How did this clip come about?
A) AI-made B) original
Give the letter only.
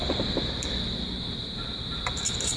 B